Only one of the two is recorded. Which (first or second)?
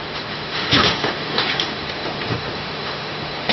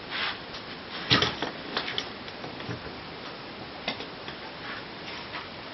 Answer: second